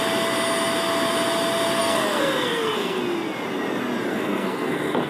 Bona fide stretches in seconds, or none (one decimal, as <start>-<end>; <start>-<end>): 0.0-1.8; 3.0-4.1